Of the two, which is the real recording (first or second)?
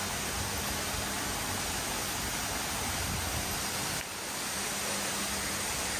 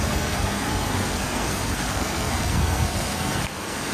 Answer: first